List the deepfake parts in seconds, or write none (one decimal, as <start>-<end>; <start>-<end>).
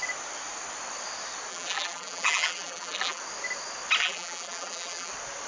1.5-3.2; 4.0-5.1